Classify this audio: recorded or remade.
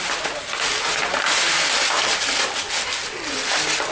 recorded